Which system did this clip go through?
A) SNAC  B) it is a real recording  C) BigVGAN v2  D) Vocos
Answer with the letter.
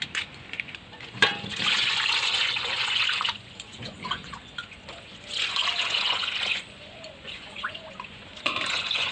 D